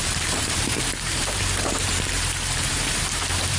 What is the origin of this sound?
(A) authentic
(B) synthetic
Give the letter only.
B